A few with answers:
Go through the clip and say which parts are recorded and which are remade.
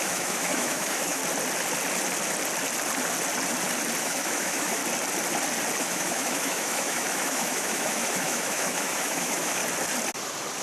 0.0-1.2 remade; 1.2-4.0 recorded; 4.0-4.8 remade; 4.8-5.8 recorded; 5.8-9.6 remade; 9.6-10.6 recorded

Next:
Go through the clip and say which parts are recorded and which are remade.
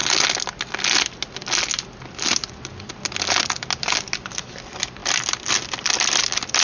0.0-6.6 recorded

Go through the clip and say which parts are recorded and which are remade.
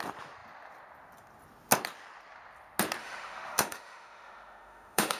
0.0-3.0 recorded; 3.0-5.2 remade